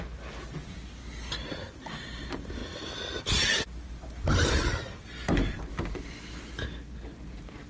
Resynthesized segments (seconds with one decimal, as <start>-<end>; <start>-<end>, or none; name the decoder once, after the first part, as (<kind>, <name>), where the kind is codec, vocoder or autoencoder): none